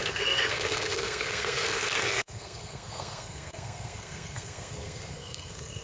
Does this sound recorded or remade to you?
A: remade